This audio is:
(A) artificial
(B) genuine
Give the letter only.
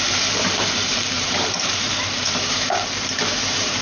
A